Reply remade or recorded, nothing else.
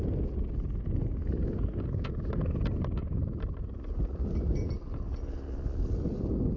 recorded